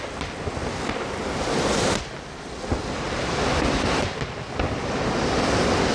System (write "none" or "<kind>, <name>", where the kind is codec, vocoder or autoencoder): none